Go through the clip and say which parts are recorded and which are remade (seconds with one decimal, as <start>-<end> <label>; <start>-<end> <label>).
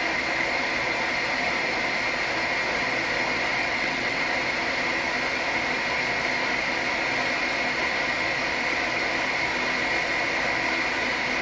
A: 0.0-3.6 recorded; 3.6-4.2 remade; 4.2-11.4 recorded